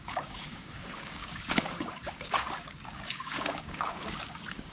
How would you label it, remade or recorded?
remade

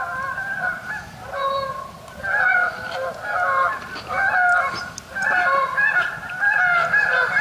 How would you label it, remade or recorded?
recorded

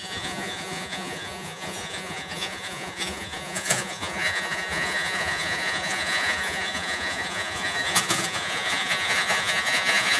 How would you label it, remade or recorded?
remade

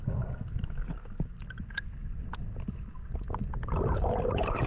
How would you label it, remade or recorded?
recorded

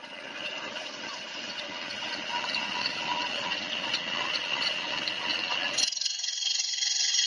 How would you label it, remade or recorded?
remade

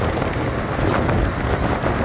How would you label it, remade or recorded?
recorded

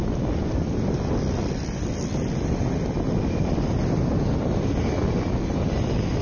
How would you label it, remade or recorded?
recorded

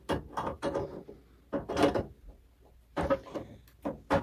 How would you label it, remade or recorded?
recorded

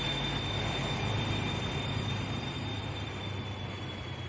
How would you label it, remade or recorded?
recorded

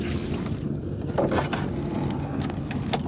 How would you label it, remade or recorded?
recorded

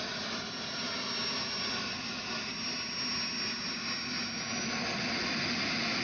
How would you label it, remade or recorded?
recorded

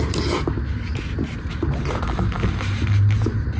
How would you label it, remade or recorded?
recorded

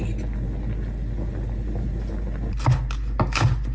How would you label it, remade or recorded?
recorded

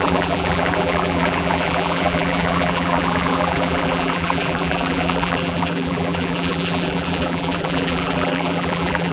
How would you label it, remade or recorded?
remade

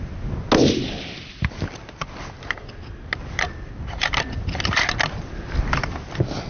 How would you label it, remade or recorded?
recorded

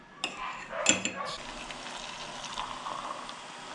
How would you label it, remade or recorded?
recorded